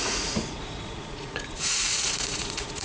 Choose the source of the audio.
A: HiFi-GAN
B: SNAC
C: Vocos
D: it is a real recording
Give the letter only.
C